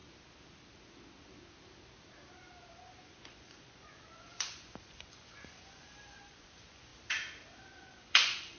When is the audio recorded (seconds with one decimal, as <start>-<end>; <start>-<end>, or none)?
0.0-3.0; 6.9-7.7